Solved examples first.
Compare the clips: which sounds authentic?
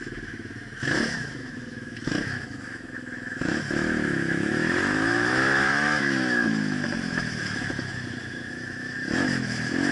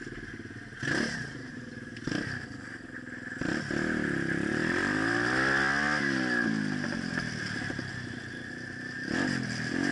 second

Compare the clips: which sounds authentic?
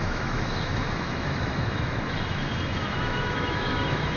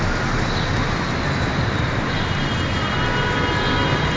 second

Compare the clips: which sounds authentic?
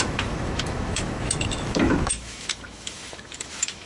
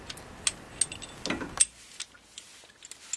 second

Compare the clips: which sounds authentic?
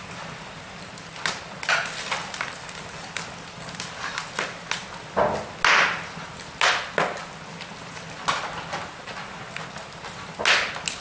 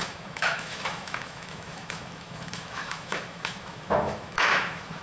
first